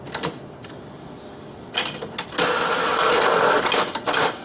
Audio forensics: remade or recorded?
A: recorded